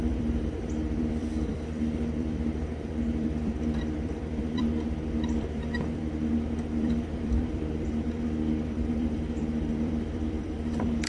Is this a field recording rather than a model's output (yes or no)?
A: no